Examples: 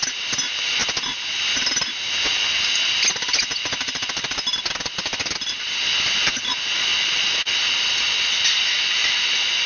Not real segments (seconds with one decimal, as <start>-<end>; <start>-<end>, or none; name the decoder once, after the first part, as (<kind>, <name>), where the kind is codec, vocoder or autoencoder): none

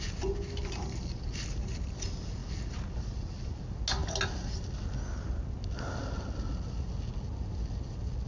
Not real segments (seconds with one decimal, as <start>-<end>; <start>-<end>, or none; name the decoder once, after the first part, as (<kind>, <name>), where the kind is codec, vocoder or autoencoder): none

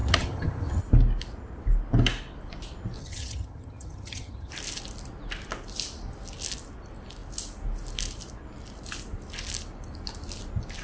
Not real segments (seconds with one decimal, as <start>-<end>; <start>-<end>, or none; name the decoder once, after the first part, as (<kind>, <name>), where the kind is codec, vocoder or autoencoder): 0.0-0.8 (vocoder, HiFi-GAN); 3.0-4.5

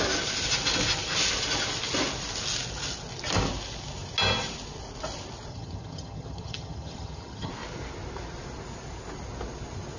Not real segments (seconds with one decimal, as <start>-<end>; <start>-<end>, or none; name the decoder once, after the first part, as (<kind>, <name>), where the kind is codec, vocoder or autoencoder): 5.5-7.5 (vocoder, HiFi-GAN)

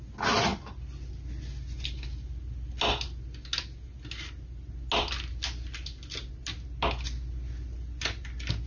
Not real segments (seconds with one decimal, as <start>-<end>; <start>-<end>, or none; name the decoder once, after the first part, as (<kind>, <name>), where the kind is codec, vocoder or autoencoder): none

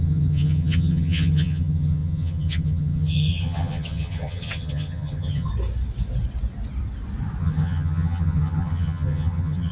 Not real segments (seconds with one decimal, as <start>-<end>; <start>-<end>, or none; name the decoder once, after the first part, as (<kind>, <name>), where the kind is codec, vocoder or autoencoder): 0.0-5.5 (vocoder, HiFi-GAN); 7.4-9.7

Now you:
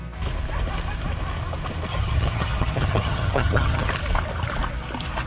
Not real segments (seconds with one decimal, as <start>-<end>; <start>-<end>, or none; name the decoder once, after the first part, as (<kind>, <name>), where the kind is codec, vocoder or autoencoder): 1.9-3.9 (vocoder, HiFi-GAN)